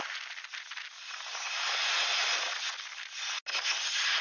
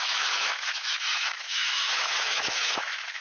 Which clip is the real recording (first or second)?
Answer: first